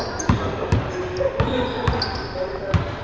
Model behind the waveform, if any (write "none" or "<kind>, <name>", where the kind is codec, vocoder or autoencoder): none